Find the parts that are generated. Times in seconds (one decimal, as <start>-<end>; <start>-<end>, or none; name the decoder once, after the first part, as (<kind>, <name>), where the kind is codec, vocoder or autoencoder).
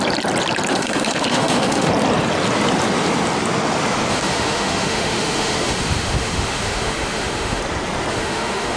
0.7-1.9 (autoencoder, DAC-VAE); 4.1-7.6; 8.1-8.8